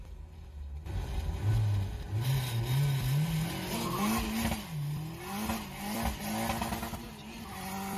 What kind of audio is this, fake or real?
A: real